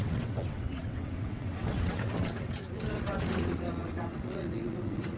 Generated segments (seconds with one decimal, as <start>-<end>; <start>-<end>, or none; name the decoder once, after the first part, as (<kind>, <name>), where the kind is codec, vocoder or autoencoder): 0.0-5.2 (vocoder, WaveNeXt)